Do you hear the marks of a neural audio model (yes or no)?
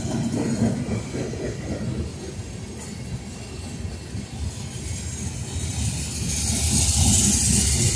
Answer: no